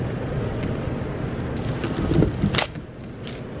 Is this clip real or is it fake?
real